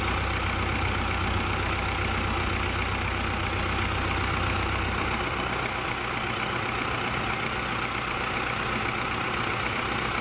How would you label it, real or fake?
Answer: real